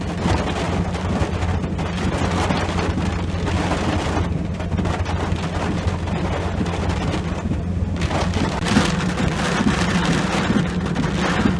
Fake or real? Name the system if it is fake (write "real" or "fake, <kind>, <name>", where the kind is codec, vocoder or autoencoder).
real